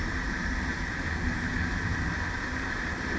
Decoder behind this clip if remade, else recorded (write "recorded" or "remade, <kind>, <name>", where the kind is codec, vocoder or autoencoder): remade, vocoder, BigVGAN v2